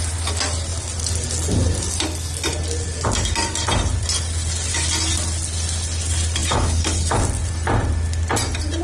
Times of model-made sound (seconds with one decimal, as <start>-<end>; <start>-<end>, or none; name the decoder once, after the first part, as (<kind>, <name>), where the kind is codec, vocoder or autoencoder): 6.4-7.2 (codec, HILCodec)